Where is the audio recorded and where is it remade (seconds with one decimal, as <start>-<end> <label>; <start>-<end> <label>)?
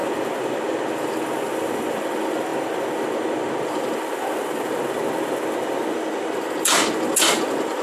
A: 0.0-7.8 recorded